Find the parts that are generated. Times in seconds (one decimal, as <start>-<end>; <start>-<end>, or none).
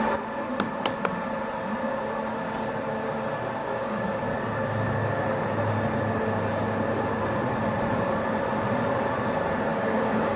3.6-4.2; 9.7-10.4